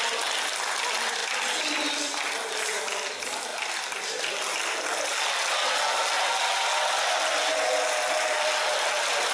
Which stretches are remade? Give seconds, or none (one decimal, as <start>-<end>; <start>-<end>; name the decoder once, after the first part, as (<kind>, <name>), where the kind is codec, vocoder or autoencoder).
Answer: none